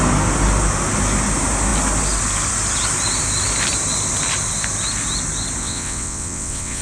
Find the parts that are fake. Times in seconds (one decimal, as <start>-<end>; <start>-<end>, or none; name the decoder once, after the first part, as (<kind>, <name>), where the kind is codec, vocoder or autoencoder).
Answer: 5.6-6.8 (vocoder, WaveNeXt)